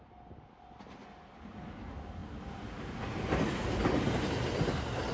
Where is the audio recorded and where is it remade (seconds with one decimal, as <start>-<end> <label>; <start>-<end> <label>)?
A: 0.0-5.1 recorded